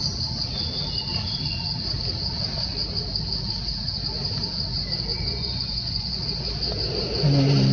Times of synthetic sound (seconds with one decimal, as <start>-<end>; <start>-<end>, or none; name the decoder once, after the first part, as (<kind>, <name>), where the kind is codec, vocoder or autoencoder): 5.1-6.2 (vocoder, Vocos)